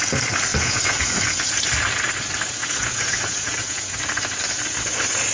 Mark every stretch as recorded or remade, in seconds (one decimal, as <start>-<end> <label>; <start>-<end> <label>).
0.0-0.5 recorded; 0.5-1.7 remade; 1.7-2.6 recorded; 2.6-4.4 remade; 4.4-5.3 recorded